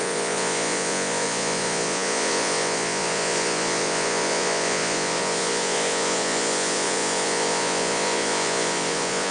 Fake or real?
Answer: fake